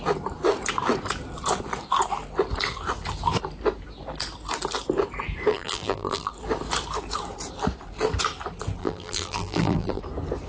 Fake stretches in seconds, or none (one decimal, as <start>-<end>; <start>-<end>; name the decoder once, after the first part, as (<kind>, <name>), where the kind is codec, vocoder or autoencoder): 5.5-6.3 (vocoder, BigVGAN v2); 8.8-10.0